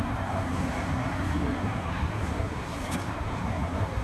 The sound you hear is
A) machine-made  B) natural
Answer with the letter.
A